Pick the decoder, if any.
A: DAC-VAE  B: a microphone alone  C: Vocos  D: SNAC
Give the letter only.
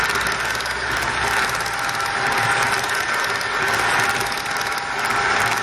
B